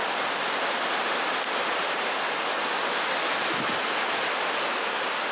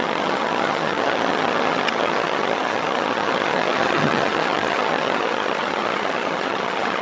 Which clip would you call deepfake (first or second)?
second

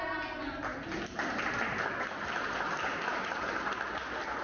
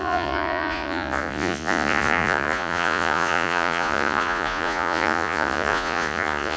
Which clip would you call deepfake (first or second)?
second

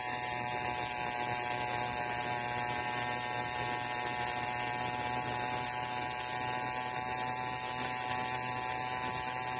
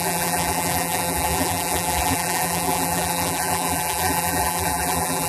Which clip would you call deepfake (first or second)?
second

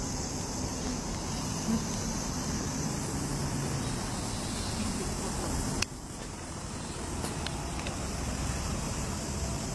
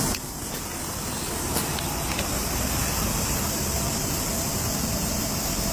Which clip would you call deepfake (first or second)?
first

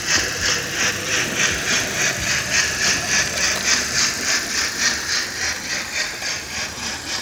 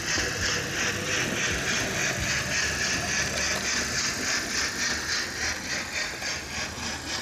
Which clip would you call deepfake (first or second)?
first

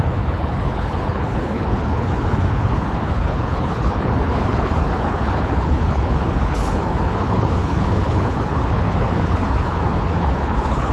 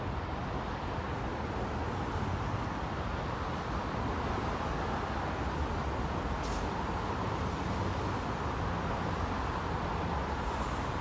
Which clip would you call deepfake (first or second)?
first